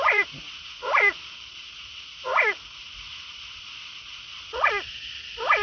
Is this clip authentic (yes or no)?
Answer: no